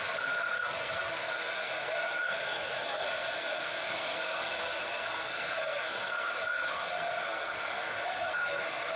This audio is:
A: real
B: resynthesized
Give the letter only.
B